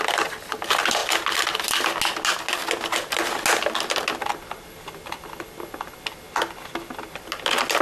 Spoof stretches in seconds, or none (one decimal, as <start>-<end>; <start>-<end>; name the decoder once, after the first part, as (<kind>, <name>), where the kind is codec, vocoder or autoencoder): none